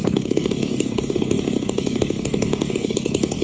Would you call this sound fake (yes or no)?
yes